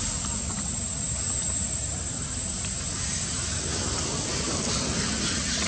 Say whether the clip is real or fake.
real